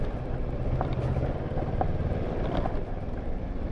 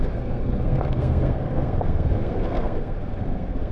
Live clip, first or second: first